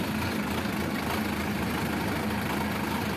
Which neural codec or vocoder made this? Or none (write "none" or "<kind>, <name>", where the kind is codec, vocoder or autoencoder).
none